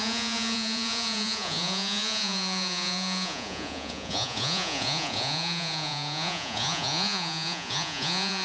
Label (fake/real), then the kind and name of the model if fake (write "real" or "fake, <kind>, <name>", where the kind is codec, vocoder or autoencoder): fake, vocoder, Vocos